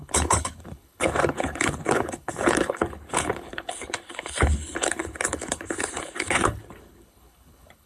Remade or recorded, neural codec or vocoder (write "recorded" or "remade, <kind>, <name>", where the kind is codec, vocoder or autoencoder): remade, codec, HILCodec